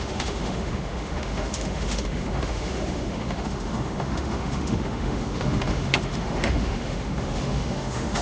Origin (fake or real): fake